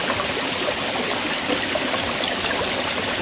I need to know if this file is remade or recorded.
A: recorded